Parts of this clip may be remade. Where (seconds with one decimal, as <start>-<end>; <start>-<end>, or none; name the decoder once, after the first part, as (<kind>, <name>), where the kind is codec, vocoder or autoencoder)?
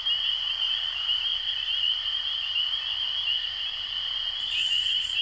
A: 0.0-5.2 (vocoder, BigVGAN v2)